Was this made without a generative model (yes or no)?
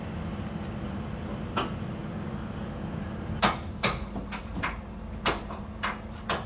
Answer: yes